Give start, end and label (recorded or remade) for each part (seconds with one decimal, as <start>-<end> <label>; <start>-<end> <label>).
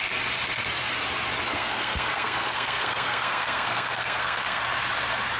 0.0-1.5 recorded; 1.5-4.6 remade; 4.6-5.4 recorded